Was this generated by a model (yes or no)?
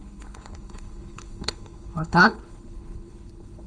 yes